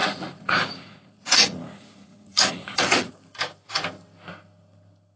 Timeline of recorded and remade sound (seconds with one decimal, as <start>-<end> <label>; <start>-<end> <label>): 0.0-3.1 remade; 3.1-5.2 recorded